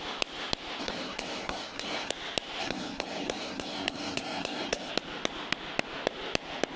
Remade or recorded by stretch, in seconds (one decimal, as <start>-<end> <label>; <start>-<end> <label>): 0.0-0.8 recorded; 0.8-2.1 remade; 2.1-2.6 recorded; 2.6-4.9 remade; 4.9-6.8 recorded